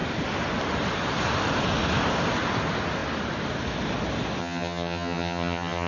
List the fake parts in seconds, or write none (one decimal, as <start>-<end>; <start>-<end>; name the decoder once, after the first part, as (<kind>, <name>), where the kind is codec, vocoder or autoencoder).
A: 4.4-5.9 (vocoder, HiFi-GAN)